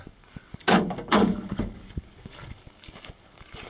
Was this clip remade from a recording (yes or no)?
yes